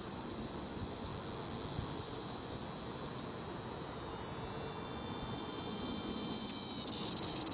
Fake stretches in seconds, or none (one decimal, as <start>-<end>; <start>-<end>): 0.0-1.1; 2.0-2.6; 4.7-7.5